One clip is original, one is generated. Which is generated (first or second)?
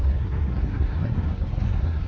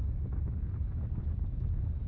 first